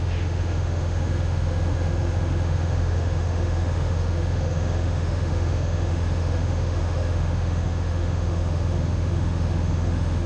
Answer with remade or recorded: remade